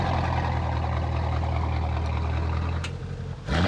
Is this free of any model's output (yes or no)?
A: yes